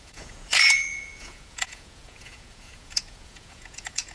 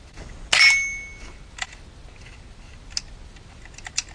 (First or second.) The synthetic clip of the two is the first